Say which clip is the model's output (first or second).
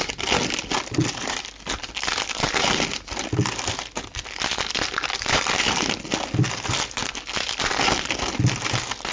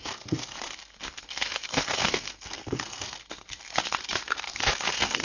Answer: second